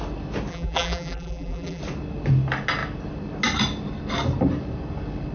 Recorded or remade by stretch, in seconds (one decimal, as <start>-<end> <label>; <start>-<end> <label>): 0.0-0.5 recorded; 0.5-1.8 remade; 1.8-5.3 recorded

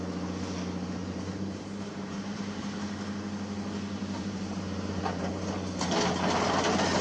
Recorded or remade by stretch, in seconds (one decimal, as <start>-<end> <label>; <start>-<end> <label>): 0.0-1.0 recorded; 1.0-2.8 remade; 2.8-4.0 recorded; 4.0-5.0 remade; 5.0-7.0 recorded

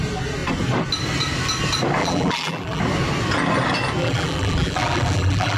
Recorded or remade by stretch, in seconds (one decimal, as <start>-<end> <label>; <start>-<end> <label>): 0.0-2.0 recorded; 2.0-2.8 remade; 2.8-4.0 recorded; 4.0-5.6 remade